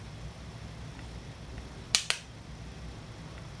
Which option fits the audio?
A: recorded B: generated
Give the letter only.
A